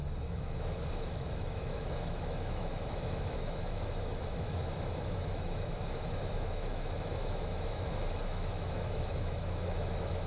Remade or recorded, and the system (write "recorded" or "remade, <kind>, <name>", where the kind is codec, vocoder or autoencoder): remade, autoencoder, DAC-VAE